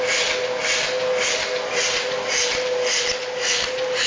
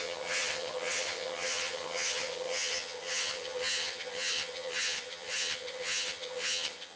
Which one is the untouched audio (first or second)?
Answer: first